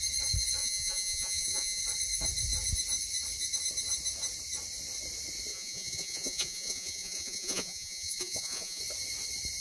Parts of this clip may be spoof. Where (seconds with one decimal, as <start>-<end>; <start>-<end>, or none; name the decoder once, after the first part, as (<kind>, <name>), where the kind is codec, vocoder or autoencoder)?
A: 0.6-1.8 (vocoder, Vocos); 5.5-8.8